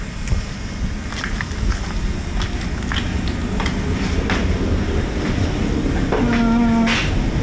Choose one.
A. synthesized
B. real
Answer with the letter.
B